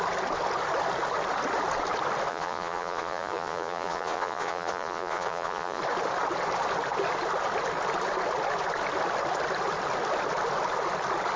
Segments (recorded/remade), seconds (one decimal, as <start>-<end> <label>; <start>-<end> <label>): 0.0-2.3 recorded; 2.3-5.8 remade; 5.8-11.4 recorded